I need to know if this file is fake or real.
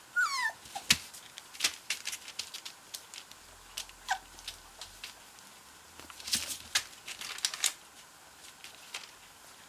real